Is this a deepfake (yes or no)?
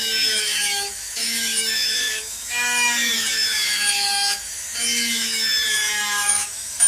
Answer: yes